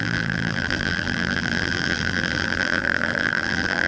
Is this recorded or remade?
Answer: remade